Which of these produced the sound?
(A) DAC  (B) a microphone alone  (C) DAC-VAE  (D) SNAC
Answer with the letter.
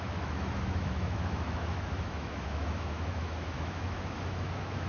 C